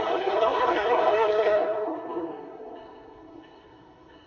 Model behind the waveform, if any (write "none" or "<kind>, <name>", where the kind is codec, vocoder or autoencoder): codec, SNAC